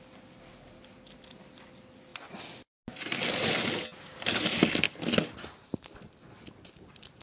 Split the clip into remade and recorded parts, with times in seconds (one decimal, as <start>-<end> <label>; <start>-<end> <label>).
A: 0.0-7.2 recorded